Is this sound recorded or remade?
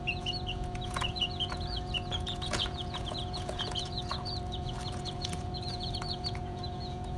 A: remade